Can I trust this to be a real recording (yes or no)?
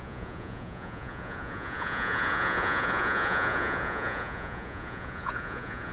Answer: no